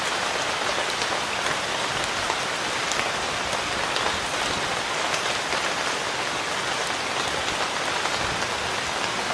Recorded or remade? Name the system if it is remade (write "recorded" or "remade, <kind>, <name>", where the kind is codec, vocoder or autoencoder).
recorded